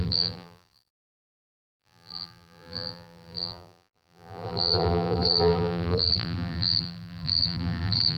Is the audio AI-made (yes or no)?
yes